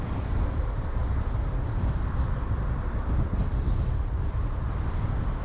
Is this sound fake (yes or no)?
yes